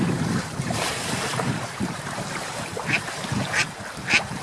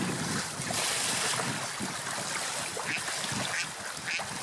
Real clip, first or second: second